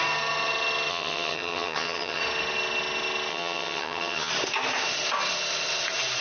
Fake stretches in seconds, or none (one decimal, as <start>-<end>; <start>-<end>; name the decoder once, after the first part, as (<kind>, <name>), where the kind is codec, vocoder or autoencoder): 0.9-2.2 (vocoder, HiFi-GAN); 3.3-4.3